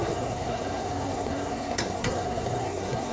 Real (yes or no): no